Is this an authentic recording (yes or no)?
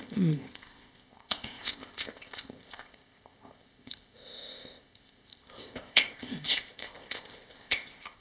no